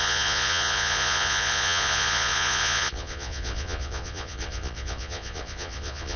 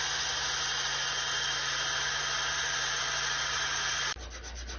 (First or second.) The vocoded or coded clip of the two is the first